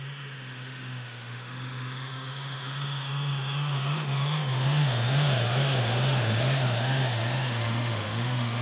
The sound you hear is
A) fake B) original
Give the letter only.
A